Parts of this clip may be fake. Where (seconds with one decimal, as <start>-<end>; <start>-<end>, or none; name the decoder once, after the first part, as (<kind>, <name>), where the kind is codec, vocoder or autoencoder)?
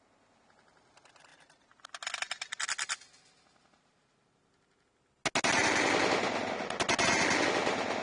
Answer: none